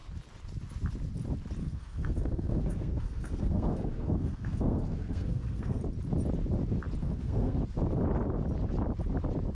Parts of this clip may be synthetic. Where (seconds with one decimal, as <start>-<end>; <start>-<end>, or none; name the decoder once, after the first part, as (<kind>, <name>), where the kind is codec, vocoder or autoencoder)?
1.6-5.8 (codec, SNAC); 7.0-7.6